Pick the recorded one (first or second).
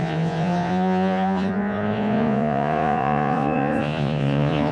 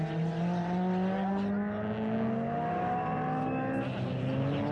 second